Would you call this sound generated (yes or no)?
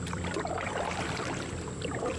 yes